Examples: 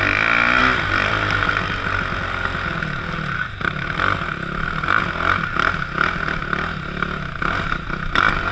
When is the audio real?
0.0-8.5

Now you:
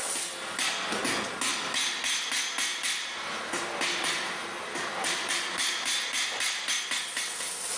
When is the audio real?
0.0-2.7; 6.7-7.8

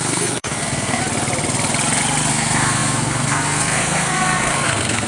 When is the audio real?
1.0-2.3

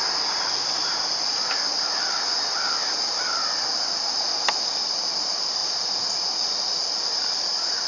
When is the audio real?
0.0-7.9

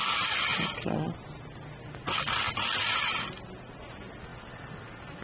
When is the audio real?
0.0-5.2

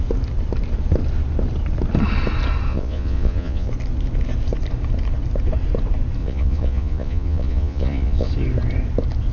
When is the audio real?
0.0-2.7; 3.7-6.2; 8.3-9.3